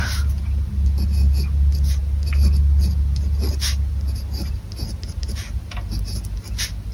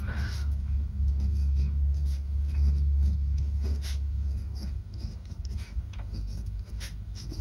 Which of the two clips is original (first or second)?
first